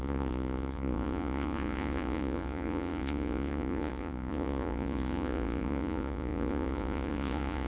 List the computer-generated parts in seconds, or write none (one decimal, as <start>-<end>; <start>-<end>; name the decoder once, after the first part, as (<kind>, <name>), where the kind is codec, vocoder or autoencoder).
0.0-7.7 (vocoder, Vocos)